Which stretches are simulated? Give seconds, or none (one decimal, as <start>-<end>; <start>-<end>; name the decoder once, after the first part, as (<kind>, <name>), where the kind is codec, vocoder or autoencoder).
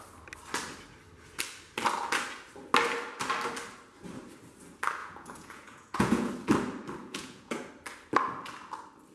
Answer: 5.0-6.3 (vocoder, Vocos); 7.0-7.7